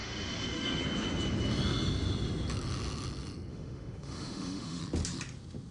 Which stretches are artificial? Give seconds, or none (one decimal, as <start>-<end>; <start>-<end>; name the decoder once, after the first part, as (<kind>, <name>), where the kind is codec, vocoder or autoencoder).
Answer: 0.0-0.8 (autoencoder, DAC-VAE); 3.5-4.8